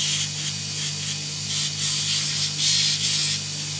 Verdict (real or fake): real